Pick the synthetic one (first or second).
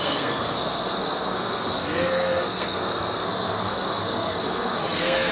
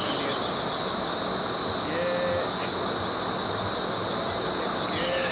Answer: first